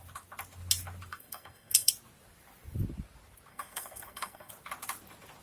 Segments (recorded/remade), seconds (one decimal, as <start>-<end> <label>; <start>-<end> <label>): 0.0-1.1 recorded; 1.1-1.9 remade; 1.9-3.5 recorded; 3.5-4.5 remade; 4.5-5.4 recorded